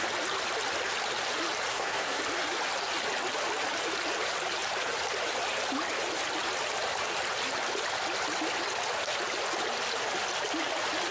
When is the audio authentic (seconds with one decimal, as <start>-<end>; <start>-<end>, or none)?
0.0-1.7; 2.2-11.1